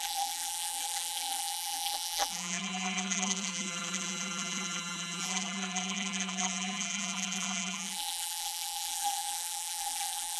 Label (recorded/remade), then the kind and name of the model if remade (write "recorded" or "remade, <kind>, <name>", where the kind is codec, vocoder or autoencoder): remade, vocoder, BigVGAN v2